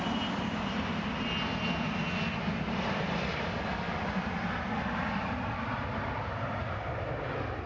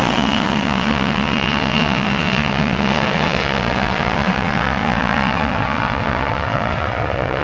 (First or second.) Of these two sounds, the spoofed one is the second